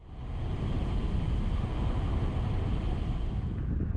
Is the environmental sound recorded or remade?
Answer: recorded